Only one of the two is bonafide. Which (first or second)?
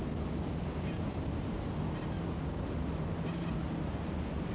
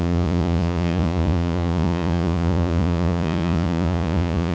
first